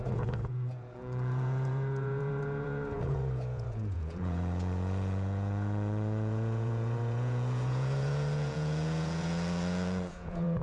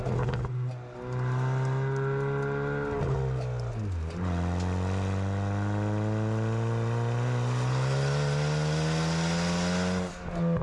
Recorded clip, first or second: second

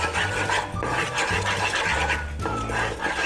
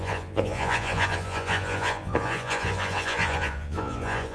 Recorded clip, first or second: first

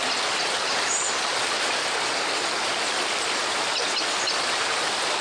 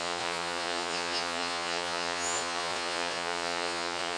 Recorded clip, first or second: first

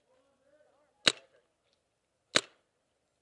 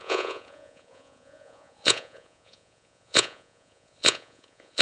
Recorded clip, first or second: first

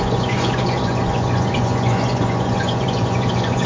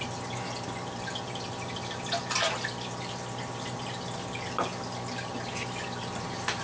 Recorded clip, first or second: second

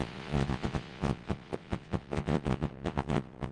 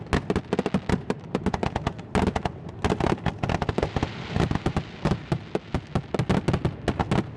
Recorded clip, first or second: second